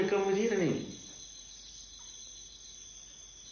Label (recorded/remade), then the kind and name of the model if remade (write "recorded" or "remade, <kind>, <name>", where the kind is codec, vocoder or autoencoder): recorded